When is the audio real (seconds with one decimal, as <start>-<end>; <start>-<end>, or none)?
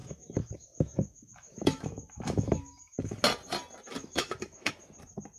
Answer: 3.2-3.9; 4.7-5.4